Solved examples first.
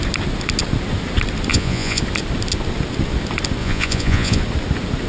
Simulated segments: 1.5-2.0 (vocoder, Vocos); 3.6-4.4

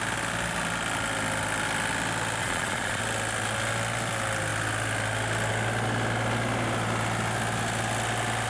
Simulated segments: 2.4-3.0 (vocoder, Vocos)

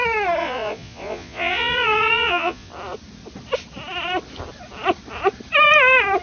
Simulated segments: 0.4-2.7 (vocoder, Vocos)

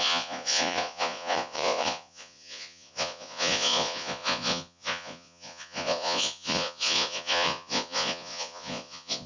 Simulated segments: 0.0-9.3 (vocoder, Vocos)

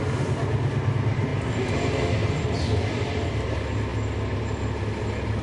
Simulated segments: none

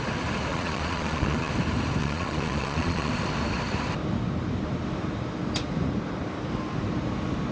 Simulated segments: 0.5-1.5 (vocoder, Vocos); 2.0-3.1